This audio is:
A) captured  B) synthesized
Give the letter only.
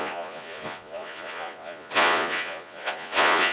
B